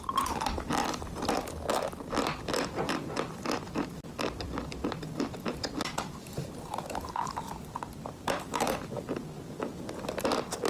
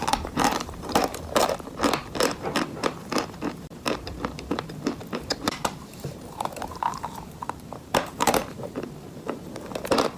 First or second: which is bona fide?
first